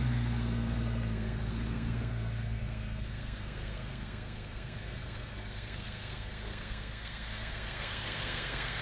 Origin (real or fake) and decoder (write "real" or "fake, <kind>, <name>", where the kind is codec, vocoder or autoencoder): fake, codec, SNAC